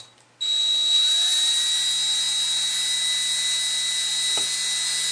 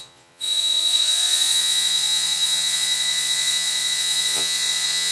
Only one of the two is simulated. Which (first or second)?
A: second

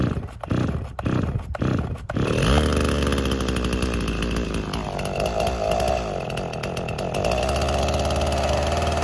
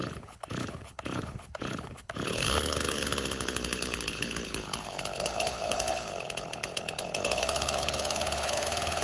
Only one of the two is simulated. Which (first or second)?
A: second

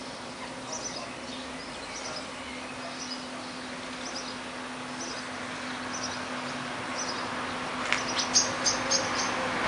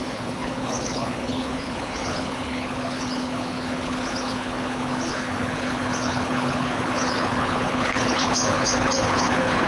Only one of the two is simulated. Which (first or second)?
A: second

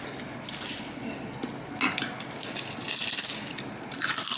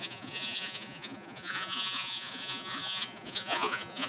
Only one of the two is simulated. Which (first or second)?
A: second